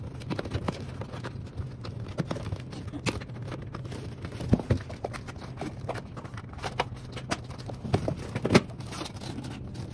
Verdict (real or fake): real